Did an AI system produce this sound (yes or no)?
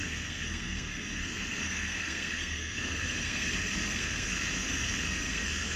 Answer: yes